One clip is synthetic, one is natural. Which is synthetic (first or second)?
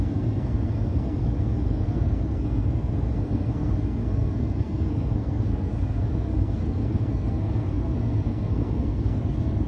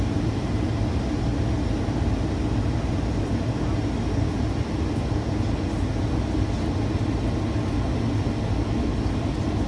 first